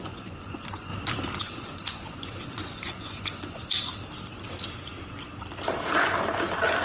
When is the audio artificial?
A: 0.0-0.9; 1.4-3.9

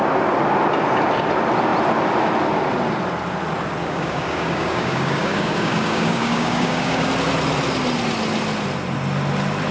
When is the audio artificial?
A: 3.8-7.1

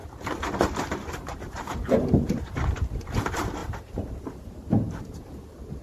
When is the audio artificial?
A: 0.9-5.8

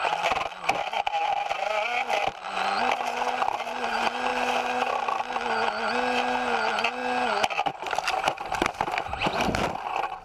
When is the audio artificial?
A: none

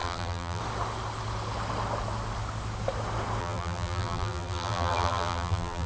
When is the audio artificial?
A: 0.0-0.6; 3.4-5.9

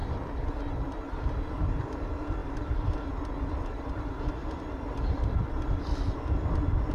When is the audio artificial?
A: 0.0-0.7; 4.4-6.9

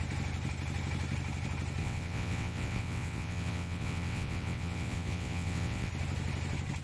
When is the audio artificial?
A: 1.8-5.9

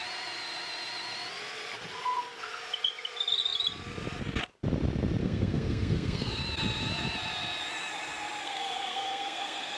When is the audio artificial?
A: 5.2-6.4; 8.4-9.8